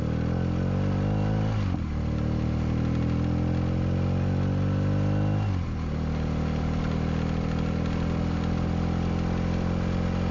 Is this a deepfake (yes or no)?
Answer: no